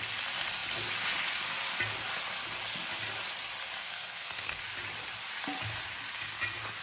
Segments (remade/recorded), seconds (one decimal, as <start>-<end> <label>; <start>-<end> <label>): 0.0-3.8 recorded; 3.8-4.6 remade; 4.6-6.8 recorded